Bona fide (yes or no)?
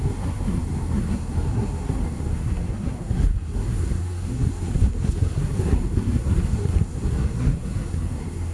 no